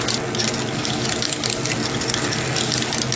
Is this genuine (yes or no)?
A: yes